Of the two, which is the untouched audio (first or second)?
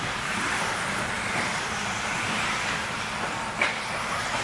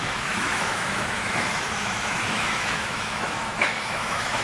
first